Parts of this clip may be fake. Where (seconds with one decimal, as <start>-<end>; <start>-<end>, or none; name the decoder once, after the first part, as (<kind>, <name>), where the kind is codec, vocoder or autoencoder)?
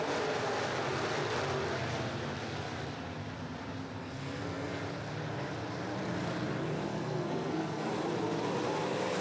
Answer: 4.0-4.8 (codec, SNAC); 6.9-7.9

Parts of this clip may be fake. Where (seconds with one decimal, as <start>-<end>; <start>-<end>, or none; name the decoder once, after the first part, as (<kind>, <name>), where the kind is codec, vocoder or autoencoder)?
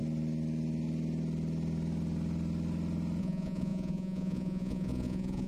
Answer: 3.2-5.5 (vocoder, Vocos)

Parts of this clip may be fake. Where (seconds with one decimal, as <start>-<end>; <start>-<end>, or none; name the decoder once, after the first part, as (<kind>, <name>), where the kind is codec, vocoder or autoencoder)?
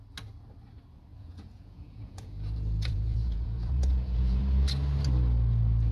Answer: 1.1-4.4 (vocoder, Vocos)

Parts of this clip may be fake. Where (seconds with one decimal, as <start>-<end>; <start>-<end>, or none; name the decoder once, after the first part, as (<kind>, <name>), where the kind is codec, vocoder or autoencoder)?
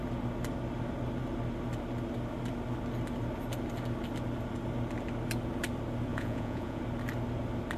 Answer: 6.1-6.8 (vocoder, Vocos)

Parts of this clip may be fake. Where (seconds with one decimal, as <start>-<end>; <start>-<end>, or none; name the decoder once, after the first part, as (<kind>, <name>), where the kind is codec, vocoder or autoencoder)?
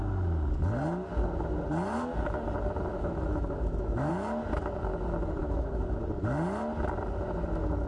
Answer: 2.9-4.1 (autoencoder, DAC-VAE); 5.4-6.0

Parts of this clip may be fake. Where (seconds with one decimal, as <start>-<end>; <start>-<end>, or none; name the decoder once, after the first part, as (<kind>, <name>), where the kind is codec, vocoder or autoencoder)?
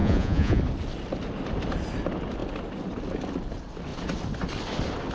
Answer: 0.0-0.6 (vocoder, Vocos)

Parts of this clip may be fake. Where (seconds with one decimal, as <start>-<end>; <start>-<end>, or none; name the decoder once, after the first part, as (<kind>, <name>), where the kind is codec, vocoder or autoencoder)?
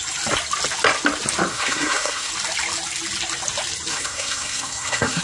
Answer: 1.5-2.3 (codec, SNAC); 3.9-5.2